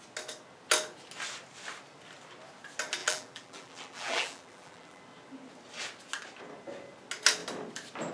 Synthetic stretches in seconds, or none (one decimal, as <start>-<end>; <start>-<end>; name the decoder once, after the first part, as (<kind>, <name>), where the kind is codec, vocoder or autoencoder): 3.0-5.0 (vocoder, BigVGAN v2)